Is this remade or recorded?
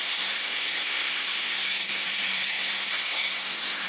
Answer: remade